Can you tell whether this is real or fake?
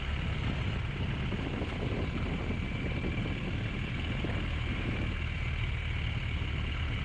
real